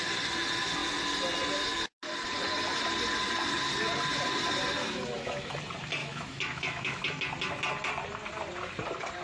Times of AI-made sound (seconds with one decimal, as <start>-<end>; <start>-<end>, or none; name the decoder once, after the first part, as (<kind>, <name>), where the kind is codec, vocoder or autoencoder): 4.8-5.6 (autoencoder, DAC-VAE); 6.0-7.2